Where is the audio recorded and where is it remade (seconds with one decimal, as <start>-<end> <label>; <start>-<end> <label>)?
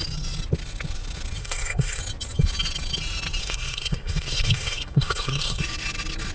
0.0-1.4 recorded; 1.4-2.0 remade; 2.0-3.4 recorded; 3.4-5.6 remade; 5.6-6.3 recorded